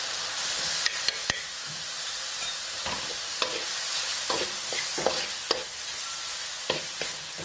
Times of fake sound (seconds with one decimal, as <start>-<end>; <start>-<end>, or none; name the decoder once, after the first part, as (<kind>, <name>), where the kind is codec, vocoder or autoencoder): 1.2-1.8 (autoencoder, DAC-VAE)